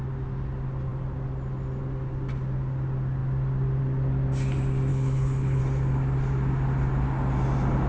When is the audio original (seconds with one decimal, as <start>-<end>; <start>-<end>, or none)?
0.0-4.9; 5.6-7.9